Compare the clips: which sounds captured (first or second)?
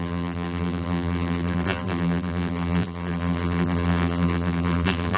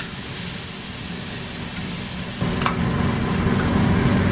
second